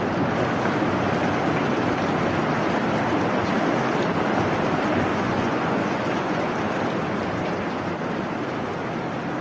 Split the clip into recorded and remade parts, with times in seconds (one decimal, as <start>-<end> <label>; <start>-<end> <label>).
0.0-5.1 recorded; 5.1-6.5 remade; 6.5-9.4 recorded